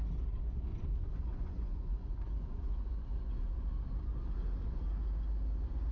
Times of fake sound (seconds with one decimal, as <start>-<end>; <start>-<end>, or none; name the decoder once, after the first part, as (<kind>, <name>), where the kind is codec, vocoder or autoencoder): 0.7-3.4 (vocoder, Vocos)